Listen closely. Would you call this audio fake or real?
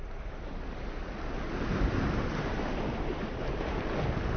real